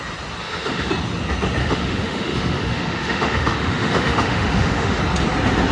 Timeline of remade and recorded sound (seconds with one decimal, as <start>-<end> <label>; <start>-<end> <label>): 0.0-0.4 recorded; 0.4-0.9 remade; 0.9-1.6 recorded; 1.6-5.0 remade; 5.0-5.7 recorded